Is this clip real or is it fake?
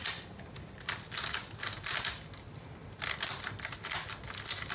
fake